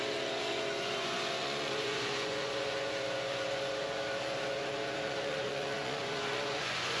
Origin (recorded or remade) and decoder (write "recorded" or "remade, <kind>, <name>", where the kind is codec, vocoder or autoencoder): remade, vocoder, Vocos